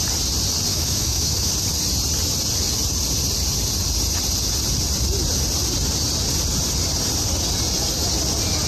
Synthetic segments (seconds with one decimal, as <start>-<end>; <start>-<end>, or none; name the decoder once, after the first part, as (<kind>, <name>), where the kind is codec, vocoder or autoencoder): 0.7-1.5 (autoencoder, DAC-VAE)